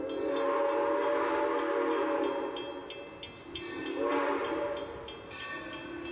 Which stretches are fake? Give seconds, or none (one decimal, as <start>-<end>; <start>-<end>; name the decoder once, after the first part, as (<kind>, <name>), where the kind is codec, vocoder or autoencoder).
none